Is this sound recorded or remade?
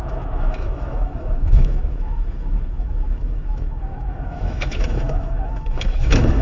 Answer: remade